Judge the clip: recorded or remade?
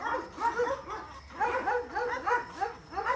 recorded